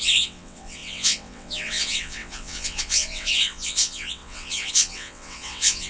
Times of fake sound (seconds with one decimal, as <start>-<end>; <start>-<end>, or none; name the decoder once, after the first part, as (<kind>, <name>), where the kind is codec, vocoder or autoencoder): 0.0-5.9 (vocoder, WaveNeXt)